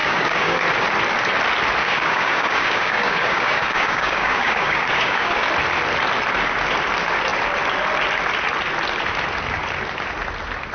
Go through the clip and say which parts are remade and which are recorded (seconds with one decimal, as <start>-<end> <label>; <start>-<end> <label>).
0.0-0.6 remade; 0.6-1.8 recorded; 1.8-5.5 remade; 5.5-10.7 recorded